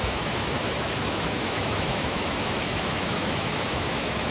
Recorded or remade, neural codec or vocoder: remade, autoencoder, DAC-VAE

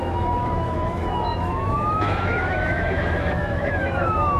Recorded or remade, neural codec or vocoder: remade, autoencoder, DAC-VAE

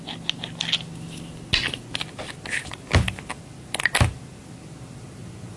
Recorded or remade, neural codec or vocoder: recorded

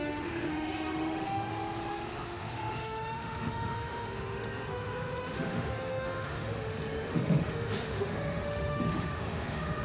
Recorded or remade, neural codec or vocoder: remade, autoencoder, DAC-VAE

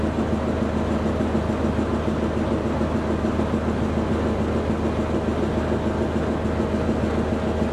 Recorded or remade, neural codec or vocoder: recorded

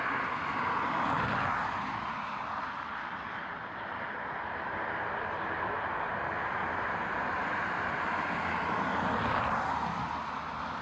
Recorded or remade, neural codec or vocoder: recorded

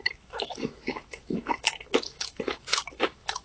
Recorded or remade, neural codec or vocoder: remade, autoencoder, DAC-VAE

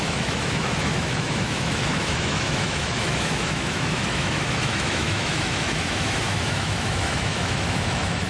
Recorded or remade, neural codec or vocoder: remade, autoencoder, DAC-VAE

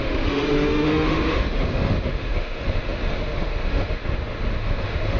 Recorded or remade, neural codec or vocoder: remade, autoencoder, DAC-VAE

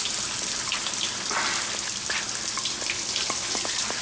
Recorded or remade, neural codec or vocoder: recorded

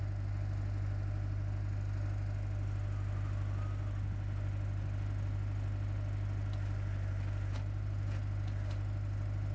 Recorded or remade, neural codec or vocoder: recorded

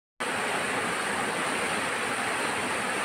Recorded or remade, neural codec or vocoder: recorded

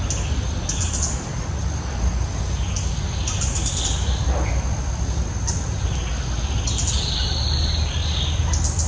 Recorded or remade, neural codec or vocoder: recorded